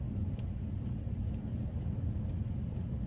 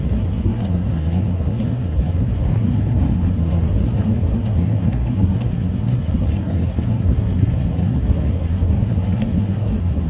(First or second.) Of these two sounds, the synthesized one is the second